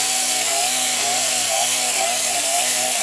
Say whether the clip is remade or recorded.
remade